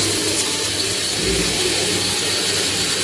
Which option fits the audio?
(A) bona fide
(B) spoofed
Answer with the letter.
A